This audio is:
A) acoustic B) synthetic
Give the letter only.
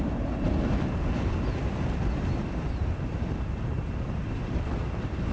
B